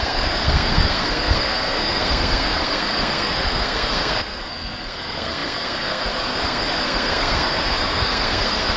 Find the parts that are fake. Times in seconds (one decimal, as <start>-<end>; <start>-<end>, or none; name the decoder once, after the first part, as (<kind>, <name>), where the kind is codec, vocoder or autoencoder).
0.0-8.8 (codec, SNAC)